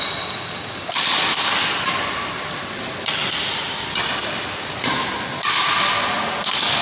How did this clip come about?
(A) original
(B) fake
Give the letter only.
A